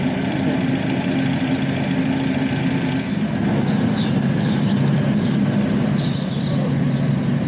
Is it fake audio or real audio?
real